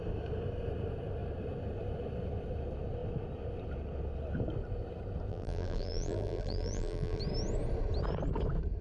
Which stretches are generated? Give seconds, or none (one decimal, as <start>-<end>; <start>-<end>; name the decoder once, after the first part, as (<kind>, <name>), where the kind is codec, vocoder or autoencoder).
5.3-7.2 (vocoder, BigVGAN v2)